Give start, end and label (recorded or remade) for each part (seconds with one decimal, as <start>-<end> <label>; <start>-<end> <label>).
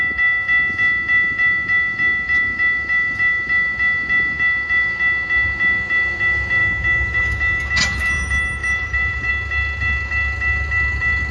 0.0-8.6 recorded; 8.6-9.3 remade; 9.3-11.3 recorded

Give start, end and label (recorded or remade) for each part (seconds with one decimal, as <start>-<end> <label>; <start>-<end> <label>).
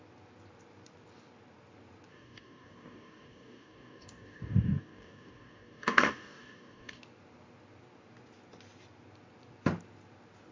0.0-2.1 recorded; 2.1-7.0 remade; 7.0-10.5 recorded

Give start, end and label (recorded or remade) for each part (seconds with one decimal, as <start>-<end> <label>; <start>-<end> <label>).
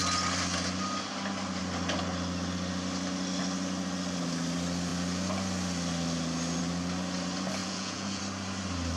0.0-7.6 recorded; 7.6-8.2 remade; 8.2-9.0 recorded